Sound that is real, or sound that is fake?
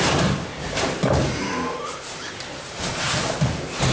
real